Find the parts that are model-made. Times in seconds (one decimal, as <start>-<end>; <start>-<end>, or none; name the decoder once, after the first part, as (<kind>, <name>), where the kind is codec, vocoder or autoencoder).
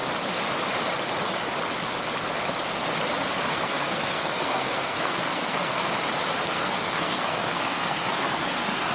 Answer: 3.5-5.8 (codec, SNAC); 6.4-8.9